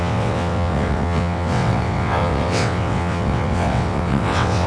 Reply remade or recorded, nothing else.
remade